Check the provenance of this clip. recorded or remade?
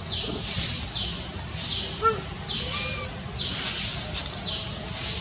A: recorded